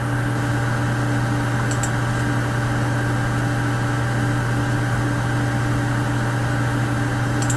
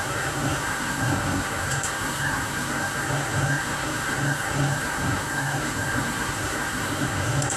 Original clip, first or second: first